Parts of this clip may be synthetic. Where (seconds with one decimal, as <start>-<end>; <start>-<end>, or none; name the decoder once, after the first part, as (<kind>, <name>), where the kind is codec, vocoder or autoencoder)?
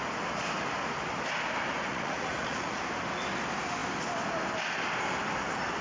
1.9-2.8 (vocoder, Vocos)